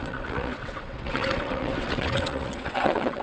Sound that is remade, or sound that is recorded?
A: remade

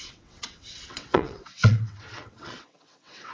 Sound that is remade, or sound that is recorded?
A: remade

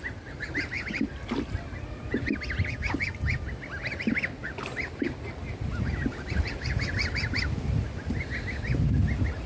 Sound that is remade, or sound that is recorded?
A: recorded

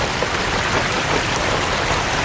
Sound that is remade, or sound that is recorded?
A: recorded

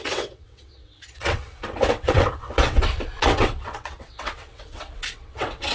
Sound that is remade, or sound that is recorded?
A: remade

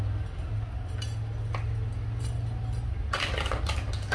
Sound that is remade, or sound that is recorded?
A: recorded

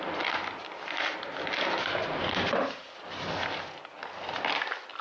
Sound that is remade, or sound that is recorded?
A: recorded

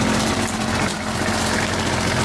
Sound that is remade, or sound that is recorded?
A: recorded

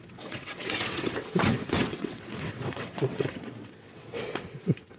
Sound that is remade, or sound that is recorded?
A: remade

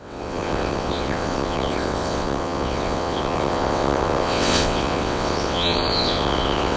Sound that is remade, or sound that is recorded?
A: remade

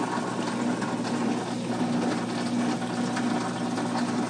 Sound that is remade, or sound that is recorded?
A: recorded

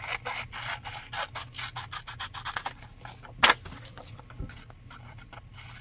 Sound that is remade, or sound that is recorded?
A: recorded